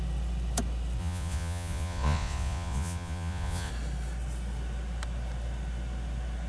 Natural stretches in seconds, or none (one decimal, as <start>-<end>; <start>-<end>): 0.0-1.0; 3.7-6.5